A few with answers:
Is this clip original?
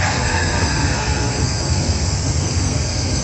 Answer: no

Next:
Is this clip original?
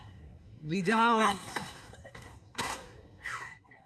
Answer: no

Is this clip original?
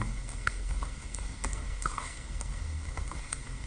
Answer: no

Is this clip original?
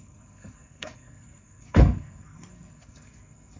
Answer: no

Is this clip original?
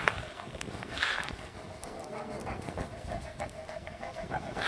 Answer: no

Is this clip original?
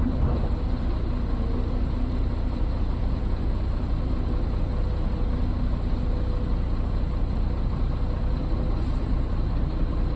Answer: yes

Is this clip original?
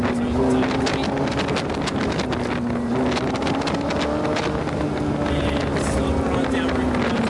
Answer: yes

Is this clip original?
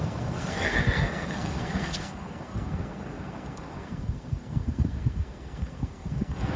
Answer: no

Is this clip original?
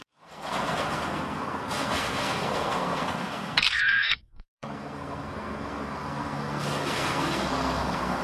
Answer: no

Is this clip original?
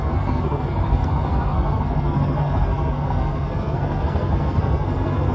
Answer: no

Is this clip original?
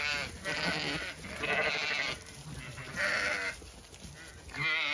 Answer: yes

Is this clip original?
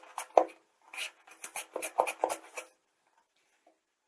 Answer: yes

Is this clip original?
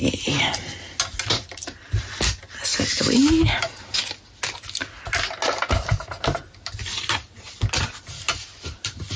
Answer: yes